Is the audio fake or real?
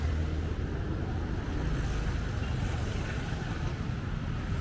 real